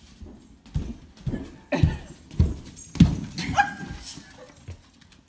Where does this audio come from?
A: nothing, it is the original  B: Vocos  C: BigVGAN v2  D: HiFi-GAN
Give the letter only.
A